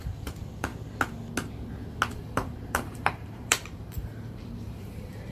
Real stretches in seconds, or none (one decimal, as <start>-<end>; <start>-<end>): 0.7-2.1